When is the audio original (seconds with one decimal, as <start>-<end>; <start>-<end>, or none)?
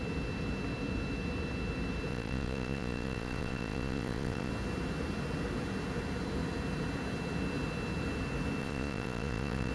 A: 0.0-2.1; 4.5-8.6